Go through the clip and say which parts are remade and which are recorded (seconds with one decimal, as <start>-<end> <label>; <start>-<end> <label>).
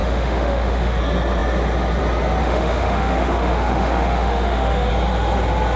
0.0-1.0 remade; 1.0-2.4 recorded; 2.4-4.9 remade; 4.9-5.8 recorded